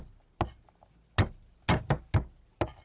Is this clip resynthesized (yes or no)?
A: no